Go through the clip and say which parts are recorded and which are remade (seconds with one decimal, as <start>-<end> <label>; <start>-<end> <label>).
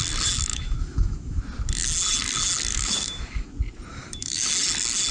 0.0-0.5 recorded; 0.5-1.4 remade; 1.4-2.7 recorded; 2.7-3.5 remade; 3.5-3.9 recorded; 3.9-4.5 remade; 4.5-5.1 recorded